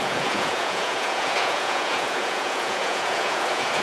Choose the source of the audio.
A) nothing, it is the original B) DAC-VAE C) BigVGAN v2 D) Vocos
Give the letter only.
D